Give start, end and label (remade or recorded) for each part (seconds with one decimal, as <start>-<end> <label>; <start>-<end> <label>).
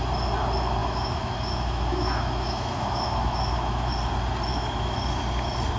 0.0-0.8 recorded; 0.8-3.9 remade; 3.9-4.5 recorded; 4.5-5.0 remade; 5.0-5.8 recorded